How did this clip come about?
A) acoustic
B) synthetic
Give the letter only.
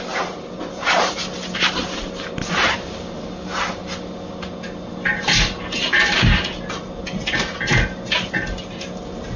A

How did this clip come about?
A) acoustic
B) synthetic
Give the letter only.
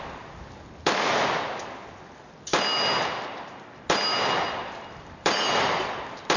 A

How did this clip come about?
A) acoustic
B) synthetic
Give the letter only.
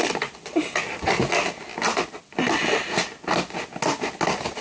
A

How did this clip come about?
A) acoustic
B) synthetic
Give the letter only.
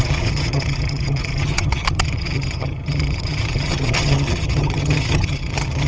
B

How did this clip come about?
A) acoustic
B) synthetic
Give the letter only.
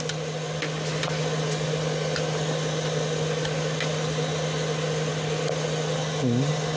A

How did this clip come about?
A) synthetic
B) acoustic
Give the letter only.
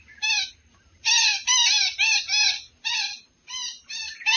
B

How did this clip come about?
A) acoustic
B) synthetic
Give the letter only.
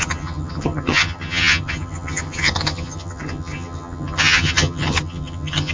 B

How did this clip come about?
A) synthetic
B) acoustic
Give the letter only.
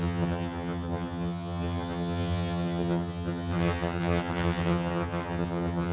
A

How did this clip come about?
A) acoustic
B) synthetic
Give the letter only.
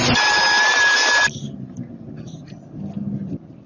A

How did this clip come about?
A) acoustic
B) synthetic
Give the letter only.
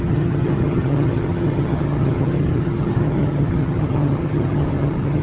B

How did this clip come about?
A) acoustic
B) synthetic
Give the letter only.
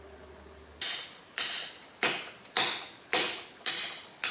A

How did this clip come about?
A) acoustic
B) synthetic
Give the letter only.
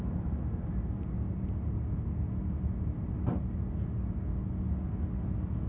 A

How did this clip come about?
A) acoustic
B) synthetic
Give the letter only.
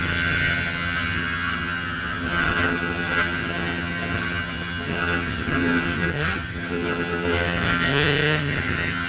B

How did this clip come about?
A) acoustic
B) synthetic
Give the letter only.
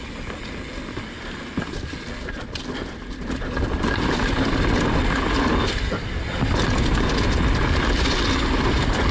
A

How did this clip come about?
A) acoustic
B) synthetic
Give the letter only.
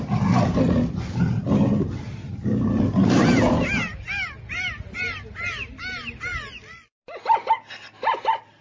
A